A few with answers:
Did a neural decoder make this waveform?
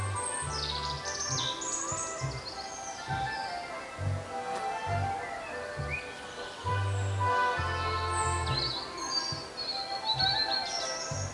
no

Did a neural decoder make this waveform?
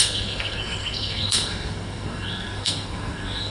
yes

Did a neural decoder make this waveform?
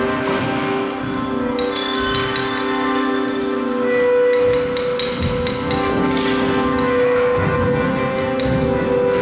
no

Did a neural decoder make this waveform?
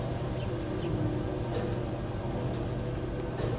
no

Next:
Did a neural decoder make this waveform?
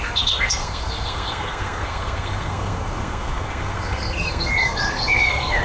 yes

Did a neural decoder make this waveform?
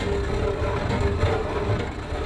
no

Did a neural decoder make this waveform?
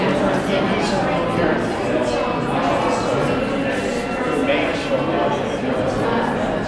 no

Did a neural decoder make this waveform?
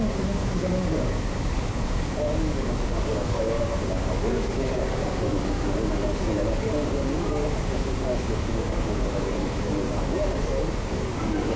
yes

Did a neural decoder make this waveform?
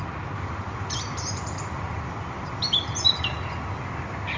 no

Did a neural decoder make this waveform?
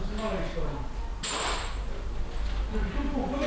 no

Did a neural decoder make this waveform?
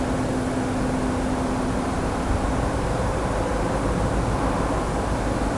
no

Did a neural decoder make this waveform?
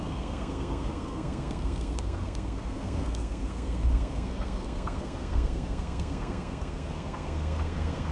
yes